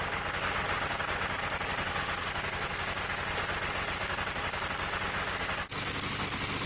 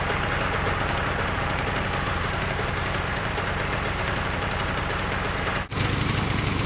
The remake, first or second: second